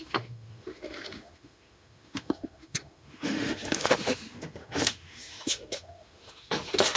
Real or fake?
fake